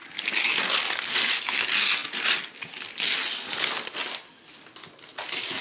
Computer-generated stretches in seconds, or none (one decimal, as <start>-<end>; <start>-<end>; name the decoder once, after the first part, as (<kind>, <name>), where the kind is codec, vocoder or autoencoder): none